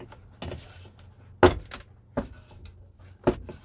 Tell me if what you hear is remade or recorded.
recorded